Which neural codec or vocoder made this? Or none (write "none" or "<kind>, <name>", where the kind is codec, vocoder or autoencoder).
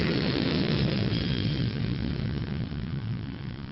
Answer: vocoder, WaveNeXt